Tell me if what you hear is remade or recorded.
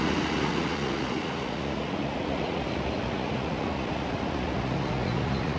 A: remade